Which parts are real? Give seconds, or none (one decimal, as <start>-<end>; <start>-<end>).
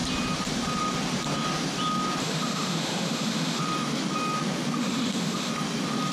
0.0-2.2; 3.6-4.8; 5.5-6.1